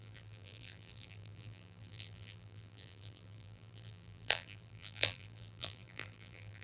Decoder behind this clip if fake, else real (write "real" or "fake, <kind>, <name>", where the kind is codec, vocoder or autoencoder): fake, vocoder, BigVGAN v2